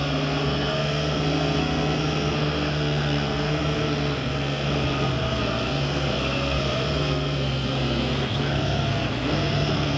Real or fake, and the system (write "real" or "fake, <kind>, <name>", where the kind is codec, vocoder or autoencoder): fake, codec, SNAC